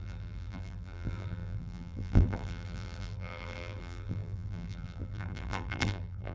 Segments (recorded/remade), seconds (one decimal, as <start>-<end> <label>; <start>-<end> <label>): 0.0-6.3 remade